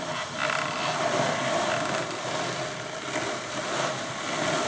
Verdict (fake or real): real